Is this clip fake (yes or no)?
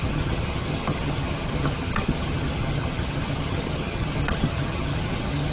yes